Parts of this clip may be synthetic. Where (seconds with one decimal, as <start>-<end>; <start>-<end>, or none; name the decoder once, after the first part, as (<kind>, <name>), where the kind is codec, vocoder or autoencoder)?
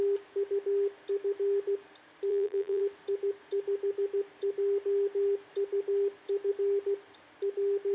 2.3-2.8 (vocoder, BigVGAN v2)